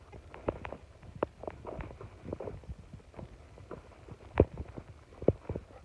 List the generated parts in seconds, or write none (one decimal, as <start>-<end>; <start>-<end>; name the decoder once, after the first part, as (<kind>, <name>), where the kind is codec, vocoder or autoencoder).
none